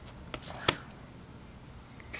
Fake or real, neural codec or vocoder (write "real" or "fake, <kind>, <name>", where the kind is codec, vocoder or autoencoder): real